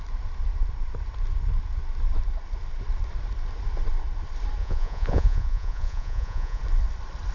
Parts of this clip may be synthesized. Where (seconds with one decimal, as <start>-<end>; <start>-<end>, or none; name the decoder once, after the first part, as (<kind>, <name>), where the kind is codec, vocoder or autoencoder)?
4.6-6.6 (vocoder, Vocos)